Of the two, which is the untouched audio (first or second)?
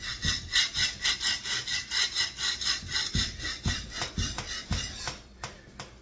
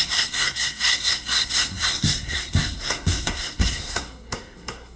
first